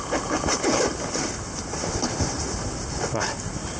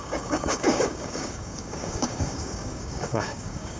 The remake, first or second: second